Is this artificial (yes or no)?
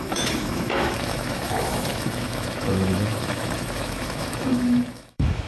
yes